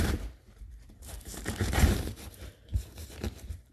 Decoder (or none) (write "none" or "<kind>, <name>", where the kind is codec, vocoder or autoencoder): vocoder, BigVGAN v2